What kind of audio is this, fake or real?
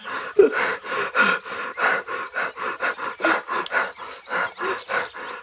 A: real